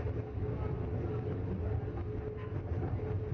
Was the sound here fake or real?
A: real